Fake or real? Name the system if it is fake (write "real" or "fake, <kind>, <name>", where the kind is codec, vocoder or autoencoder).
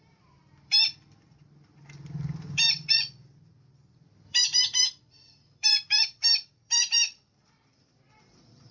fake, vocoder, BigVGAN v2